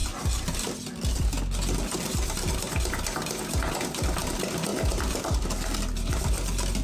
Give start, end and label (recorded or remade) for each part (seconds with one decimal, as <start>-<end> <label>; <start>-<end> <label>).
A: 0.0-6.8 recorded